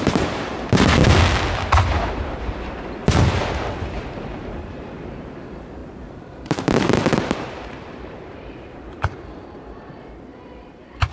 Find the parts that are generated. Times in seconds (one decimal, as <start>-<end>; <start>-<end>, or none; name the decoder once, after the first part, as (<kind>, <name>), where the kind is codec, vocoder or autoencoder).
0.0-1.0 (vocoder, BigVGAN v2); 2.4-3.0; 3.8-11.1